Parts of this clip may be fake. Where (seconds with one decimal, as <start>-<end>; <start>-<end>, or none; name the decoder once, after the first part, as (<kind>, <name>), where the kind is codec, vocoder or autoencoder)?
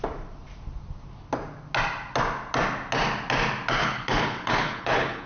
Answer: 3.8-5.3 (codec, HILCodec)